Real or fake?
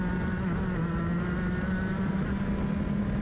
real